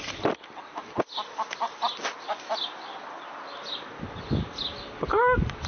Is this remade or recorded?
recorded